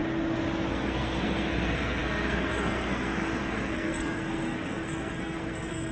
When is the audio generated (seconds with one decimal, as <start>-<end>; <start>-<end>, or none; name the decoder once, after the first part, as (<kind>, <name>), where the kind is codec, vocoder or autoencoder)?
0.7-5.9 (codec, SNAC)